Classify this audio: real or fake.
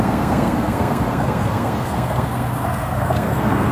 fake